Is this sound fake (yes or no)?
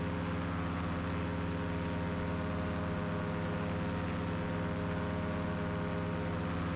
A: no